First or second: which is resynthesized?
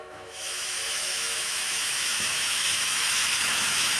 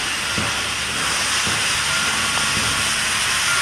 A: first